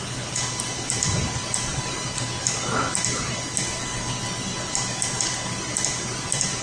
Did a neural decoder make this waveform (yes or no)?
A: no